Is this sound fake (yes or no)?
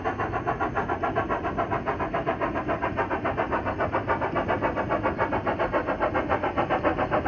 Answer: no